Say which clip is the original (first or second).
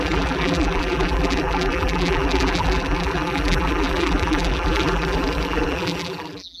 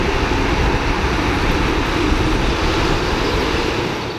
second